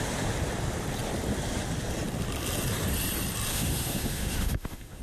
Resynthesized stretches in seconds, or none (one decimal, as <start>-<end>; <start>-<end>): 3.5-5.0